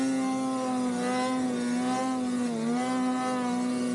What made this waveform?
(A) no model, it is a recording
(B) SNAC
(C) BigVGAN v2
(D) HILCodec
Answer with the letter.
A